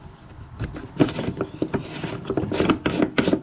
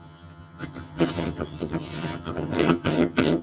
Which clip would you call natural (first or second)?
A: first